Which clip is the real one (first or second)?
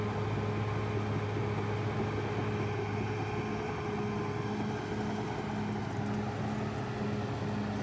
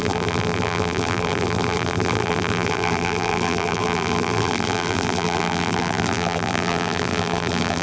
first